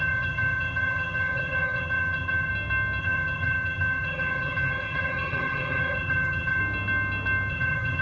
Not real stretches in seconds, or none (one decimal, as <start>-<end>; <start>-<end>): 0.0-2.5; 3.0-6.6; 7.5-8.0